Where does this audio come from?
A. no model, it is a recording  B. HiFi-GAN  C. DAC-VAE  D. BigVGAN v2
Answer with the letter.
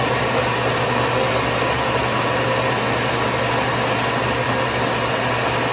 A